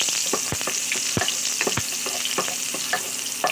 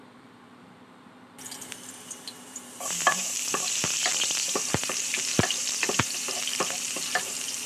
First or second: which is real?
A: first